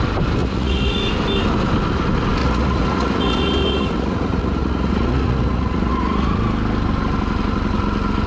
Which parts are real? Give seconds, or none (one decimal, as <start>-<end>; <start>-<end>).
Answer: 0.0-0.4; 1.0-2.4; 6.4-8.3